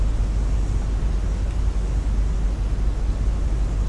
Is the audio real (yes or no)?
yes